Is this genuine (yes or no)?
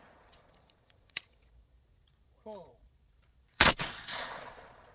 no